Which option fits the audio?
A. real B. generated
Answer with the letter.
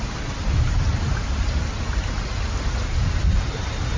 A